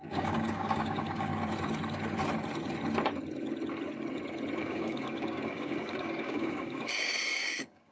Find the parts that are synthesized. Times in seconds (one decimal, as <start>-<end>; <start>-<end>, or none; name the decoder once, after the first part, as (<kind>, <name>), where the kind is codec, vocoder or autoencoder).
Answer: 0.0-1.3 (codec, DAC); 4.6-7.9